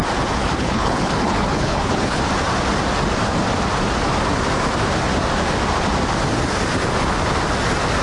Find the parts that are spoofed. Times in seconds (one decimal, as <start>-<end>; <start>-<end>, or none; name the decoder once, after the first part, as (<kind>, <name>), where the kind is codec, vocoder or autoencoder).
0.4-2.2 (codec, HILCodec)